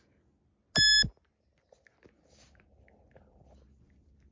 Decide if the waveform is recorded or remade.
recorded